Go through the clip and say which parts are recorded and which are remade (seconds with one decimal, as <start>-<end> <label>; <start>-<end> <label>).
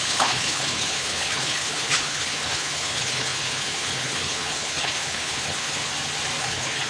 0.0-5.9 remade; 5.9-6.4 recorded; 6.4-6.9 remade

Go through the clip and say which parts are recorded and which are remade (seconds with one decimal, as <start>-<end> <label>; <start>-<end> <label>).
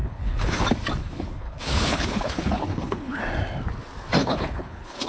0.0-0.6 remade; 0.6-1.0 recorded; 1.0-3.2 remade; 3.2-4.2 recorded; 4.2-5.1 remade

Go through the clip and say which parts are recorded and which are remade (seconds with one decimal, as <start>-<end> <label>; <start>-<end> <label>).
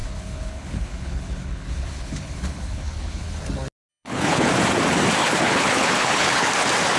0.0-3.4 remade; 3.4-3.9 recorded; 3.9-4.5 remade; 4.5-5.2 recorded; 5.2-6.5 remade; 6.5-7.0 recorded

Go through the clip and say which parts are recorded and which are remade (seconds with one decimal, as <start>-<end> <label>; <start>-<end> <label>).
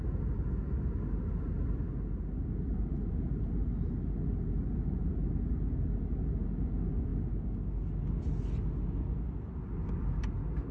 0.0-10.7 recorded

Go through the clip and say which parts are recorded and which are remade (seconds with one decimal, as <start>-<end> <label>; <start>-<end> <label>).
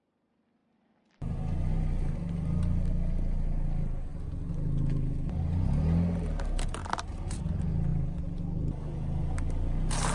0.0-10.1 recorded